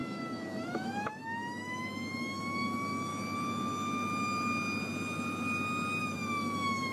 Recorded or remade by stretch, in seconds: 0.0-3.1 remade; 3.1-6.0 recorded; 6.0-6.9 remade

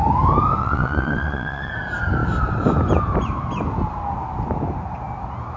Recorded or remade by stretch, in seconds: 0.0-0.6 recorded; 0.6-1.7 remade; 1.7-5.6 recorded

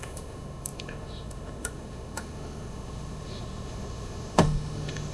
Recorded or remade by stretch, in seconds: 0.0-5.1 remade

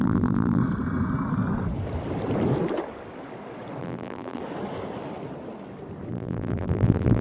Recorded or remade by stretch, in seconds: 0.0-0.6 remade; 0.6-3.8 recorded; 3.8-4.4 remade; 4.4-6.1 recorded; 6.1-7.2 remade

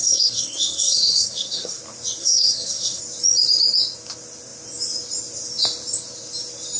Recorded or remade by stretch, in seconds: 0.0-1.8 remade; 1.8-2.2 recorded; 2.2-3.0 remade; 3.0-6.8 recorded

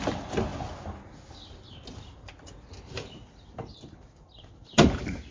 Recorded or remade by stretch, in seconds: 0.0-5.3 recorded

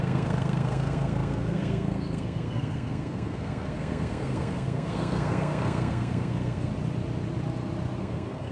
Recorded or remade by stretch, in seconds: 0.0-6.7 remade; 6.7-8.0 recorded; 8.0-8.5 remade

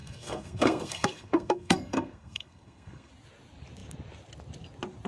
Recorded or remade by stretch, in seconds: 0.0-3.1 remade; 3.1-5.1 recorded